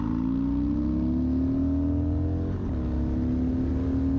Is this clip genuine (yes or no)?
yes